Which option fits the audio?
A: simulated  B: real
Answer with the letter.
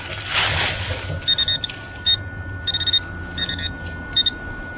B